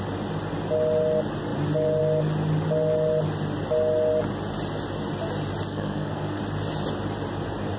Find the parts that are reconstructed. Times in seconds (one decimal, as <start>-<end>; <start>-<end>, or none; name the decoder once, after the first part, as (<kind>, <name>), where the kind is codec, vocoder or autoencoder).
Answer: 5.7-6.4 (codec, SNAC)